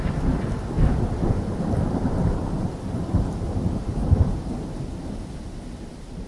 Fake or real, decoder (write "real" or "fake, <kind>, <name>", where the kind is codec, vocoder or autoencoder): fake, vocoder, BigVGAN v2